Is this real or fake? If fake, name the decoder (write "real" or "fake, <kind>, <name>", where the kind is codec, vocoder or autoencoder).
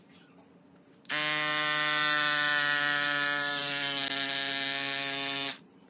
real